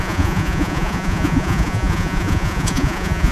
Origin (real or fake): fake